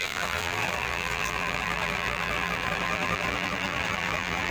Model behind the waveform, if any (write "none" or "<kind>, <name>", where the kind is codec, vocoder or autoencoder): vocoder, BigVGAN v2